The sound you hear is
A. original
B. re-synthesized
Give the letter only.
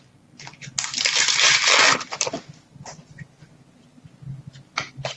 A